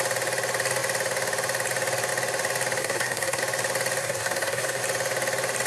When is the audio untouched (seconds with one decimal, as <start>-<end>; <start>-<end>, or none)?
0.0-2.8; 3.4-4.0; 4.8-5.7